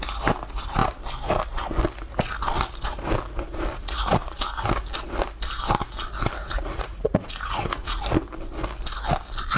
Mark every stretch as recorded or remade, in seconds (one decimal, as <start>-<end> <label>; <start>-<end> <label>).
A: 0.0-3.7 recorded; 3.7-4.4 remade; 4.4-6.4 recorded; 6.4-8.0 remade; 8.0-9.6 recorded